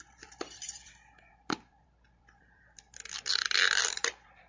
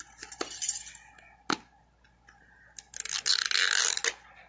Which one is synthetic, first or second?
first